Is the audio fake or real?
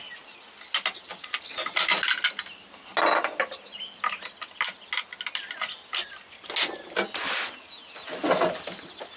real